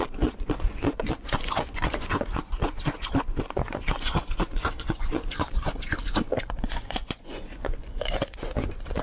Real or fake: fake